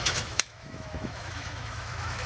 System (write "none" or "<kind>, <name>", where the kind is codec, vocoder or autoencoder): autoencoder, DAC-VAE